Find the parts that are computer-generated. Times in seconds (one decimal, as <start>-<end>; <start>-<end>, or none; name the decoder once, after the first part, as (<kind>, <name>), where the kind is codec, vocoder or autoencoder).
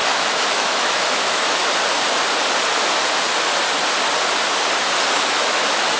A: 0.0-1.6 (autoencoder, DAC-VAE); 5.2-6.0